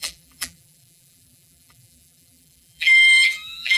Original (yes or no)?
no